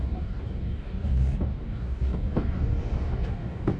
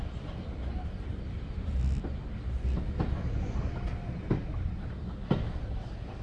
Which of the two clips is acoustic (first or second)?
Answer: second